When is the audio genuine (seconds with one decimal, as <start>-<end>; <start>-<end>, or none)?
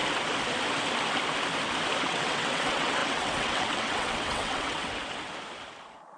0.0-2.0; 4.9-6.2